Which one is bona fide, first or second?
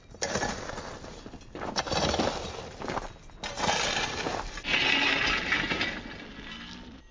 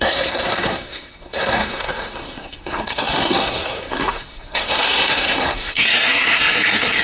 first